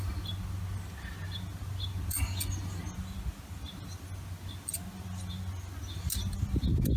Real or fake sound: real